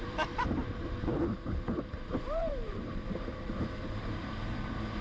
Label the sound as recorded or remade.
remade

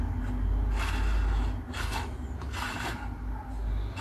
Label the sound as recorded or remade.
recorded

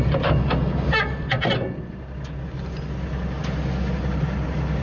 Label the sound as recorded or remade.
recorded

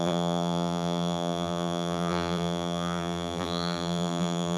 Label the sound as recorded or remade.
remade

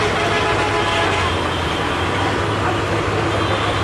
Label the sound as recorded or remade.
recorded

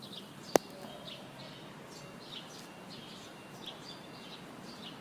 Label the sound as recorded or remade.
recorded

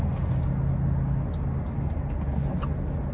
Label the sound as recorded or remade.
recorded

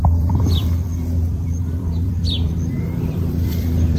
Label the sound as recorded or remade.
remade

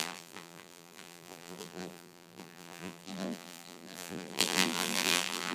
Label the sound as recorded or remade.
remade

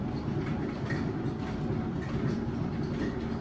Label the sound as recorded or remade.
recorded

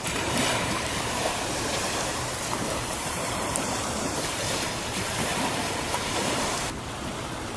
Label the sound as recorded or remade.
remade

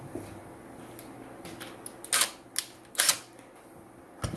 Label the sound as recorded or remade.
recorded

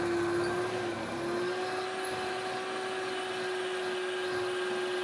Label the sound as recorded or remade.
recorded